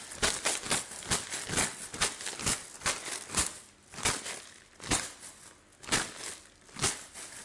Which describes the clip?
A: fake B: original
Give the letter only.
B